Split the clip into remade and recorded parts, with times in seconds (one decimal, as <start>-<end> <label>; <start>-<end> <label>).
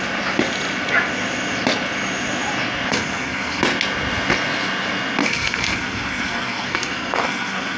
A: 0.0-2.9 recorded; 2.9-3.6 remade; 3.6-5.2 recorded; 5.2-7.8 remade